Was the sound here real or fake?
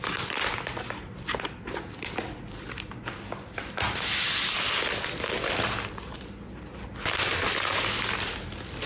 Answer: real